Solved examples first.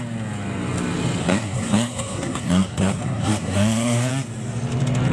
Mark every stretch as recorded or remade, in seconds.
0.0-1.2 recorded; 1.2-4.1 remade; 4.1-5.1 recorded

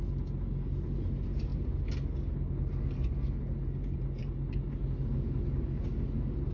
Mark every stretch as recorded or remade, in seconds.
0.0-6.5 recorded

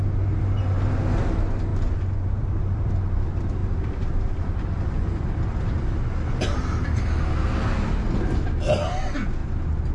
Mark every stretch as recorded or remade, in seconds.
0.0-1.7 recorded; 1.7-2.9 remade; 2.9-3.6 recorded; 3.6-6.0 remade; 6.0-9.9 recorded